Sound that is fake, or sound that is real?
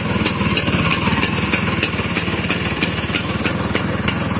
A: real